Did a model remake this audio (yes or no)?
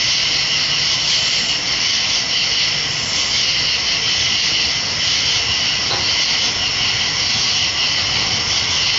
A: no